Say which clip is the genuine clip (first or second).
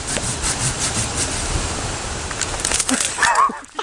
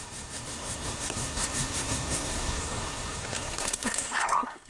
first